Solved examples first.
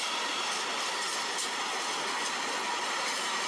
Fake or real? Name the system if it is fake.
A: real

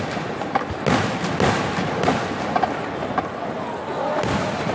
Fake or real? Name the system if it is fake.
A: real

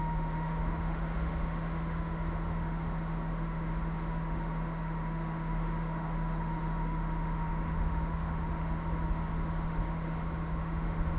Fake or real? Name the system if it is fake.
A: fake, autoencoder, DAC-VAE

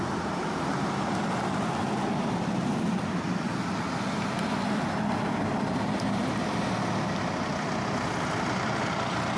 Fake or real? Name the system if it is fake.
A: real